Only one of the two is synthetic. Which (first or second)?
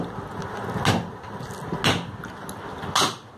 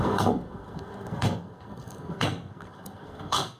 second